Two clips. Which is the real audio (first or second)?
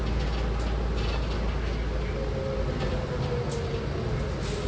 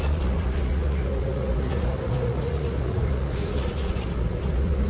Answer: first